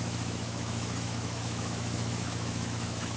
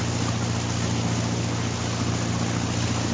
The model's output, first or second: first